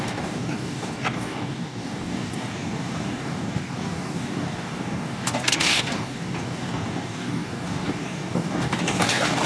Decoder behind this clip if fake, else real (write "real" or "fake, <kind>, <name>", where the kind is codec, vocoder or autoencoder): fake, codec, DAC